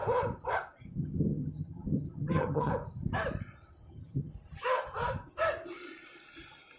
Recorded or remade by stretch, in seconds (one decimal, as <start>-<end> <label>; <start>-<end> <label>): 0.0-0.8 recorded; 0.8-2.7 remade; 2.7-3.9 recorded; 3.9-4.3 remade; 4.3-6.8 recorded